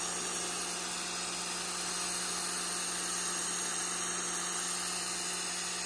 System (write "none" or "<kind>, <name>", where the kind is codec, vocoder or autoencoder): none